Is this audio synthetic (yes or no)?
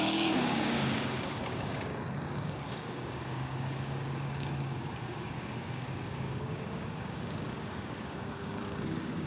yes